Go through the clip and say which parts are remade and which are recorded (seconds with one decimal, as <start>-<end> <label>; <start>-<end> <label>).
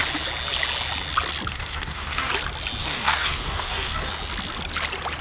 0.0-1.5 recorded; 1.5-2.3 remade; 2.3-2.8 recorded; 2.8-4.1 remade; 4.1-5.2 recorded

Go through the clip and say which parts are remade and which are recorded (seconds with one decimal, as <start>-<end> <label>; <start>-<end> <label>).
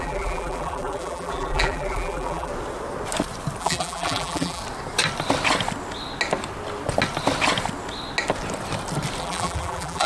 0.0-2.5 remade; 2.5-3.6 recorded; 3.6-4.6 remade; 4.6-9.2 recorded; 9.2-10.1 remade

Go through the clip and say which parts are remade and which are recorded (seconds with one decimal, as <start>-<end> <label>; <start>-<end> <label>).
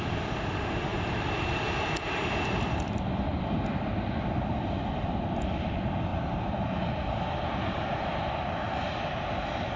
0.0-0.9 recorded; 0.9-3.9 remade; 3.9-6.1 recorded; 6.1-6.7 remade; 6.7-7.5 recorded; 7.5-8.1 remade; 8.1-9.8 recorded